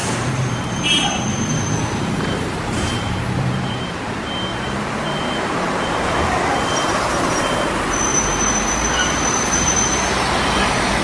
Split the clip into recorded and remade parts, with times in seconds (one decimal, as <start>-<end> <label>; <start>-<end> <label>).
0.0-3.9 remade; 3.9-4.5 recorded; 4.5-6.1 remade; 6.1-8.1 recorded; 8.1-10.6 remade; 10.6-11.0 recorded